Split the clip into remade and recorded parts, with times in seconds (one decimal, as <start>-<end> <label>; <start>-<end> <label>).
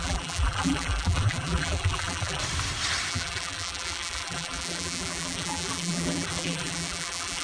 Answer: 0.0-2.4 remade; 2.4-3.1 recorded; 3.1-7.4 remade